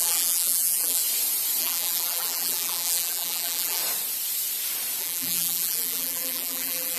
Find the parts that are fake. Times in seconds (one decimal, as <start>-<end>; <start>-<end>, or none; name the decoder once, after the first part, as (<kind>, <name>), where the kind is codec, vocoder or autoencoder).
0.0-1.0 (vocoder, BigVGAN v2); 1.6-3.8; 5.0-7.0